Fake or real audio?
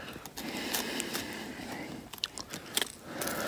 real